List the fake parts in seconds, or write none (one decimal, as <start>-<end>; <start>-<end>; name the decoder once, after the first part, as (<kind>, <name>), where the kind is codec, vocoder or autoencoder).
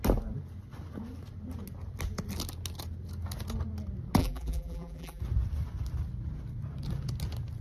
4.2-5.2 (vocoder, BigVGAN v2)